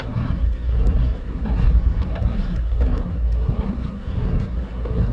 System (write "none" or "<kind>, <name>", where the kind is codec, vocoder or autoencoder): codec, SNAC